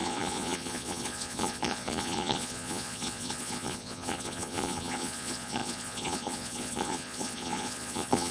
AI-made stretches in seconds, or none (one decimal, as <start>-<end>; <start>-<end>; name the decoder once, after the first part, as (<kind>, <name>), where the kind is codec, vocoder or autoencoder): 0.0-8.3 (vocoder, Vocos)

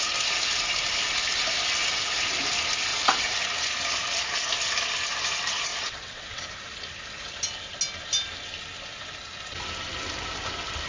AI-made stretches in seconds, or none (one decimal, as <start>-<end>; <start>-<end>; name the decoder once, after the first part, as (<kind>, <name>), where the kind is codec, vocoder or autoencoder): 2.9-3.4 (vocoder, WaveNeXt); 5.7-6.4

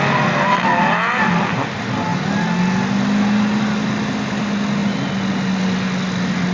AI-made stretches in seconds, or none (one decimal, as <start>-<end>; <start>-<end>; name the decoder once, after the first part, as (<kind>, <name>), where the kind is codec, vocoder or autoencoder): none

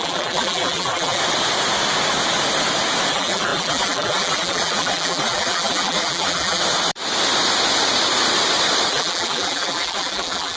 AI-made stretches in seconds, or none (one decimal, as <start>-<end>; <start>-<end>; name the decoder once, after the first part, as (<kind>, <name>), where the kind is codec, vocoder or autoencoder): 0.0-1.2 (vocoder, BigVGAN v2); 3.1-6.6; 8.9-10.6

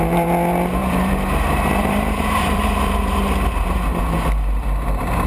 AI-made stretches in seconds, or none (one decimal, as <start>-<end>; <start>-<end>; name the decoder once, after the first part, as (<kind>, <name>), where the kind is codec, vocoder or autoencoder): 0.8-4.0 (vocoder, BigVGAN v2)

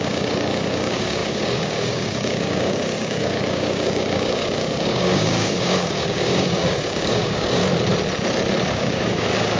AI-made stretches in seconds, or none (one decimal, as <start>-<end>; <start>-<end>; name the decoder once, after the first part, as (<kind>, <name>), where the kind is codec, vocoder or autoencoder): 0.0-7.6 (codec, DAC); 8.7-9.6

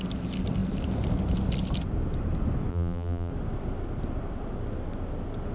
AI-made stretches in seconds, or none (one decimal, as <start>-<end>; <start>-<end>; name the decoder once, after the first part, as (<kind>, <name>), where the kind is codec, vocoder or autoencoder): 2.7-3.3 (vocoder, BigVGAN v2)

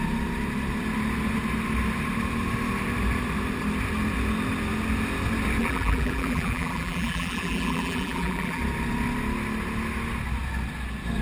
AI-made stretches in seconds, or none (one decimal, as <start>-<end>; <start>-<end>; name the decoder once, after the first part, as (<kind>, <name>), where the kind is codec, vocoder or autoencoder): 5.6-8.6 (vocoder, BigVGAN v2)